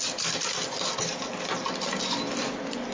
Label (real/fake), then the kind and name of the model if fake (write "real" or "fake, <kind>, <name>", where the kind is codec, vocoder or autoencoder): real